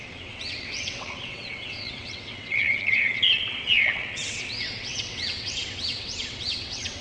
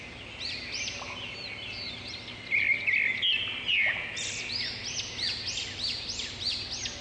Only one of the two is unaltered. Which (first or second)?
second